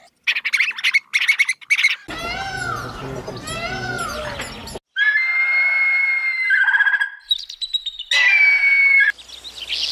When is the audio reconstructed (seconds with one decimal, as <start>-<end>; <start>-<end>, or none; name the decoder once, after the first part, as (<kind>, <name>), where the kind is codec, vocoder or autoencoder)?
none